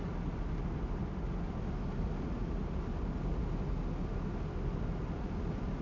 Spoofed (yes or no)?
no